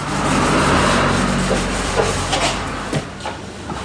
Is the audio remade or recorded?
recorded